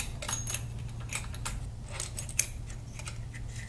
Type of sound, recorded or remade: recorded